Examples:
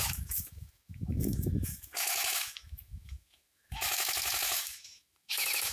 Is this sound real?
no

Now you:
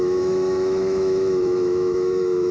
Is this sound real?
no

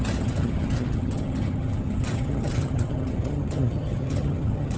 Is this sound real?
no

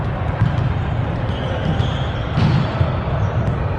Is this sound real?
yes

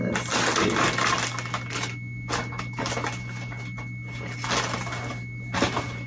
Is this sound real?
yes